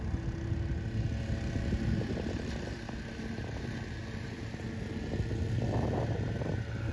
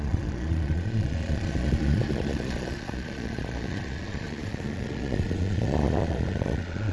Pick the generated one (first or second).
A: second